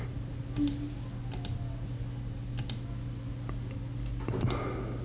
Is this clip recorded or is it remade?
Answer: recorded